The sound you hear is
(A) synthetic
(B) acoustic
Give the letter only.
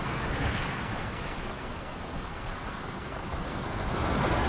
A